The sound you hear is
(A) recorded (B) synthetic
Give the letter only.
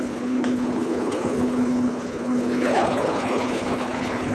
B